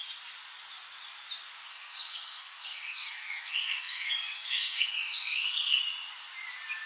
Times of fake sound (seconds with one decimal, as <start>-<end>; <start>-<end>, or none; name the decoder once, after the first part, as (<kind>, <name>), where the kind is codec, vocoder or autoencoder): 1.7-5.8 (codec, SNAC)